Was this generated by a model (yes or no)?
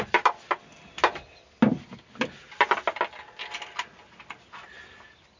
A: no